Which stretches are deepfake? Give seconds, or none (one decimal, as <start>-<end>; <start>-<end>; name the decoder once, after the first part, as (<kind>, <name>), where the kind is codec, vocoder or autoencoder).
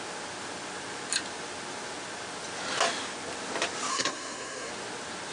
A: 3.9-4.7 (codec, SNAC)